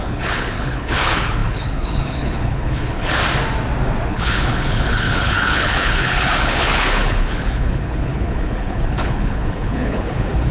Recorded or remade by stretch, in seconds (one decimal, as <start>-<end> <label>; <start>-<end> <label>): 0.0-3.2 remade; 3.2-4.1 recorded; 4.1-10.5 remade